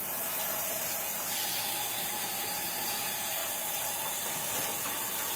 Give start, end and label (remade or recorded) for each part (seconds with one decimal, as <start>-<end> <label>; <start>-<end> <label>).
0.0-3.4 recorded; 3.4-4.4 remade; 4.4-5.4 recorded